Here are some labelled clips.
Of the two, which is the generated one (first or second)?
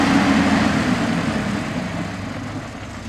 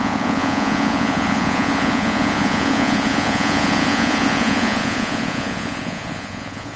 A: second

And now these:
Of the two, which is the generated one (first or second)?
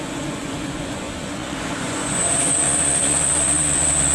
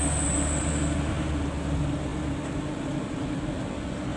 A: first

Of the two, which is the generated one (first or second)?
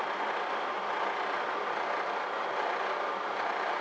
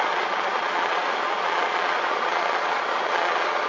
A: second